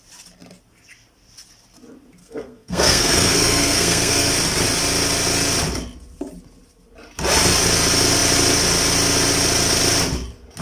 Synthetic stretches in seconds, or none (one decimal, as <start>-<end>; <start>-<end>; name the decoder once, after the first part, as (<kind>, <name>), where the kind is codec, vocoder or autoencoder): 2.2-4.3 (codec, SNAC)